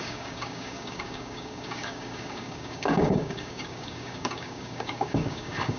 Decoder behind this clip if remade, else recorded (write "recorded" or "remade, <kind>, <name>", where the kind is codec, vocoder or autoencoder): remade, codec, DAC